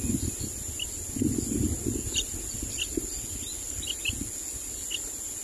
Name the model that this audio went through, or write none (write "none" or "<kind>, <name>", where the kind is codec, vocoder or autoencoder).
none